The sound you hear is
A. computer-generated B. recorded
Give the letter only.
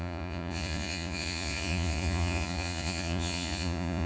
A